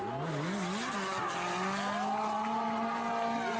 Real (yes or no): yes